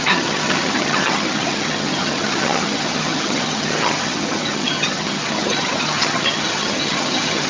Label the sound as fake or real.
fake